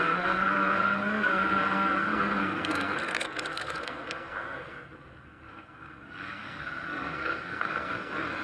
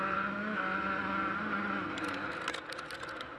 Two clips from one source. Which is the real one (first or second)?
second